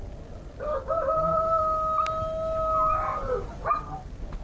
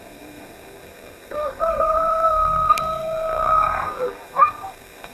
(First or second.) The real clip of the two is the first